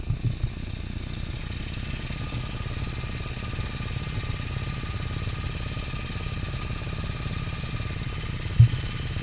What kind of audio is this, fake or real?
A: real